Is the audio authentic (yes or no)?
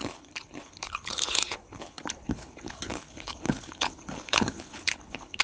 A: no